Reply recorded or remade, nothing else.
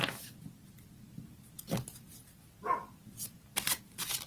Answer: recorded